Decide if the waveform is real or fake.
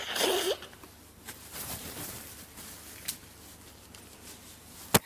real